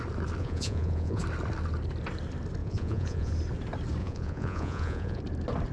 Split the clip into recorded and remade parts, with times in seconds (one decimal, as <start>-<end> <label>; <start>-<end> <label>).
0.0-0.4 recorded; 0.4-1.2 remade; 1.2-2.6 recorded; 2.6-3.3 remade; 3.3-4.0 recorded; 4.0-5.2 remade; 5.2-5.7 recorded